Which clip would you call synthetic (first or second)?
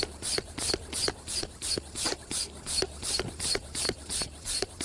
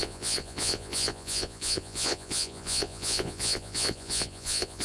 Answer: second